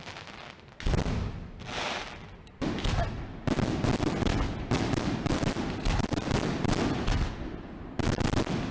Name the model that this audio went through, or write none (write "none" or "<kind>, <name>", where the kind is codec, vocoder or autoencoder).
none